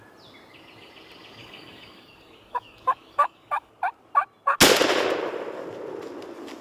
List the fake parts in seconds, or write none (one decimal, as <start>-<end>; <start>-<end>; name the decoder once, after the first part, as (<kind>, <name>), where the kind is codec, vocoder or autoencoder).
1.4-3.7 (codec, DAC)